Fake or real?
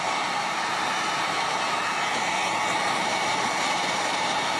real